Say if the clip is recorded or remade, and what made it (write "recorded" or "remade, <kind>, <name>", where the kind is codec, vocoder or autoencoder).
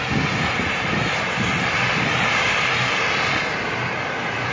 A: recorded